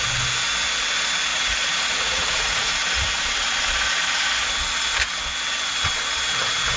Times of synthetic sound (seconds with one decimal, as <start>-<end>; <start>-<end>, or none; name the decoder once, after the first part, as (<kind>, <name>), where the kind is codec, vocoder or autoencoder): 1.3-2.7 (vocoder, Vocos)